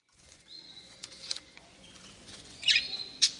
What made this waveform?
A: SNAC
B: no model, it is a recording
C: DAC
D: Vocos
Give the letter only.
D